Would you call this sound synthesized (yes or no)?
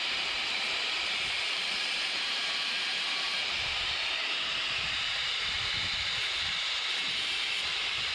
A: yes